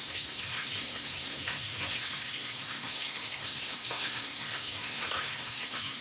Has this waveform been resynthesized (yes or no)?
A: yes